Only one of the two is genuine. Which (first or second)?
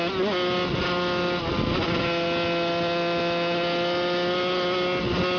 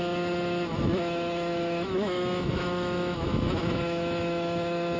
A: first